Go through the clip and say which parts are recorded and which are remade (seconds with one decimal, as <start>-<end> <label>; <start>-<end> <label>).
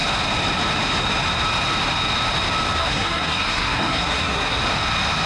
0.0-2.8 recorded; 2.8-4.6 remade; 4.6-5.3 recorded